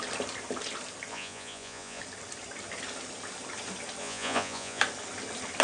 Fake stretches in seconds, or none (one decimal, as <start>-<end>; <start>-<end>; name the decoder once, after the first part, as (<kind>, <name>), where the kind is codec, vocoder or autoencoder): 1.1-2.0 (vocoder, Vocos); 4.0-4.8